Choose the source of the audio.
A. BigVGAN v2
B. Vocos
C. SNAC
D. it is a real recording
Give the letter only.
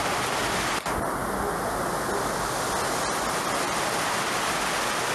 D